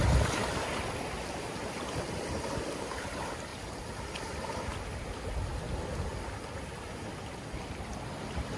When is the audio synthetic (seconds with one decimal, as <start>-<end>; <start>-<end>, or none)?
0.0-6.1; 7.2-8.6